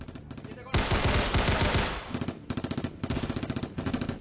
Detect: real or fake real